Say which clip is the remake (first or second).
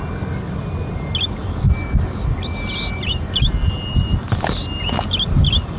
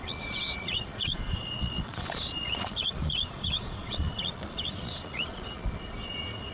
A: second